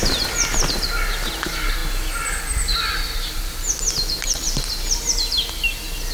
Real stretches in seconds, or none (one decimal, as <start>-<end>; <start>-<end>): 0.0-6.1